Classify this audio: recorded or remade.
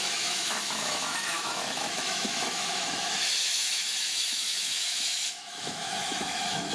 remade